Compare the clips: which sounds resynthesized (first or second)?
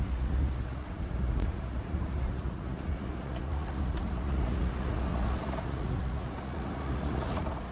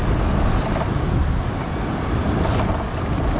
first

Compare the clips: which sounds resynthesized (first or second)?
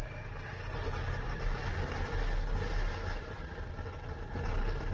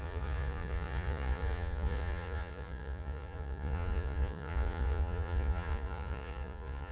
second